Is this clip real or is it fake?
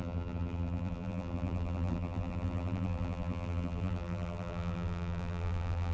fake